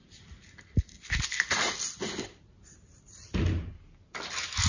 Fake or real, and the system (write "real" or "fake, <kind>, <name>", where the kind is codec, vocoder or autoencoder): real